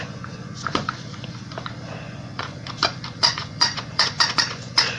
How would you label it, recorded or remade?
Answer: remade